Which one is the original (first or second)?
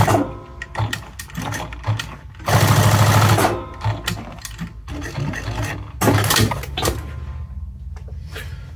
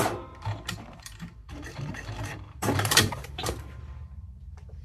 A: first